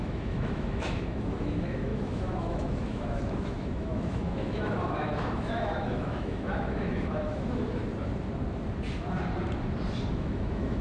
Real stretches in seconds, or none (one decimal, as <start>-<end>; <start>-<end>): 7.8-10.1

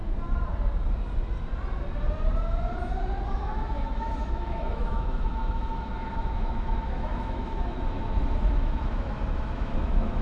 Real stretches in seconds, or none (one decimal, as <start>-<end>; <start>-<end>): 0.0-3.3

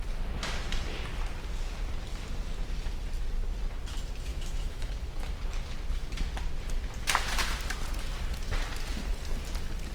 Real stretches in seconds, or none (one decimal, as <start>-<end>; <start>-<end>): 0.0-4.3; 4.9-9.9

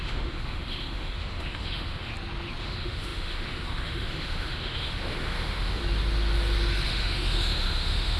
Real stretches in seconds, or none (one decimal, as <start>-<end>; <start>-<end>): 2.1-2.6; 5.8-6.9